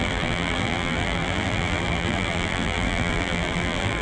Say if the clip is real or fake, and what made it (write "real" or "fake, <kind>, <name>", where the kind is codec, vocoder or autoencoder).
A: fake, vocoder, BigVGAN v2